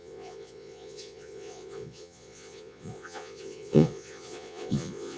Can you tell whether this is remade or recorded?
remade